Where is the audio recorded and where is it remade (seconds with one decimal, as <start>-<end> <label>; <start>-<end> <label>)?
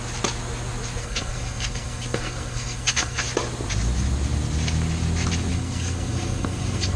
0.0-1.0 recorded; 1.0-3.2 remade; 3.2-5.5 recorded; 5.5-7.0 remade